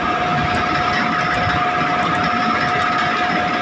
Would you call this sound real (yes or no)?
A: yes